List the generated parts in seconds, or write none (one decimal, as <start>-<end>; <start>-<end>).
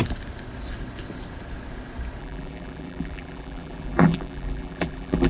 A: 2.2-5.3